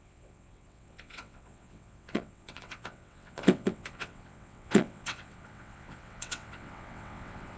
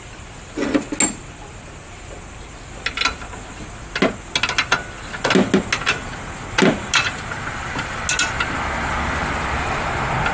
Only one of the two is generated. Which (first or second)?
first